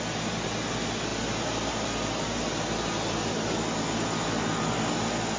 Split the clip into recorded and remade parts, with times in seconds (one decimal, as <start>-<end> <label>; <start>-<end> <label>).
0.0-5.4 recorded